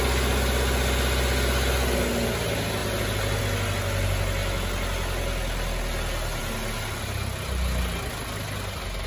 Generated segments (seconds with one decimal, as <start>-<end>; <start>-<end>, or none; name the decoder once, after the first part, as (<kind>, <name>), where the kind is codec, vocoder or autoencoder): none